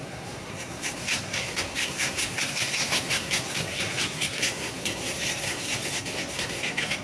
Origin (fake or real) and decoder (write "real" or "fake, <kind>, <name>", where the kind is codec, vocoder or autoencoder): fake, codec, SNAC